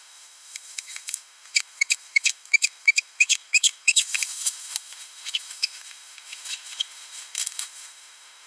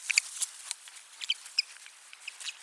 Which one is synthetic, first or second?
first